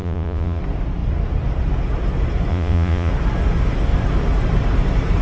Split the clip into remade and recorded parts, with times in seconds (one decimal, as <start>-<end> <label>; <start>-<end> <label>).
0.0-0.6 remade; 0.6-2.5 recorded; 2.5-3.1 remade; 3.1-5.2 recorded